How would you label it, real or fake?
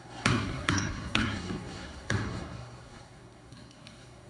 fake